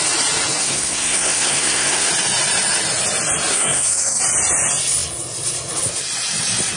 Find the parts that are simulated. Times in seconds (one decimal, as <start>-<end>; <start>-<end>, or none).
0.6-2.1; 3.5-4.2